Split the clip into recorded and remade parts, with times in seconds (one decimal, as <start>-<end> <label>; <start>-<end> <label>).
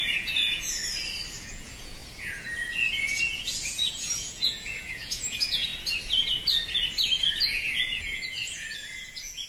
0.0-0.8 remade; 0.8-1.4 recorded; 1.4-5.7 remade; 5.7-7.4 recorded; 7.4-9.5 remade